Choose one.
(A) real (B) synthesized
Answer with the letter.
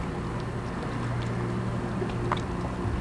A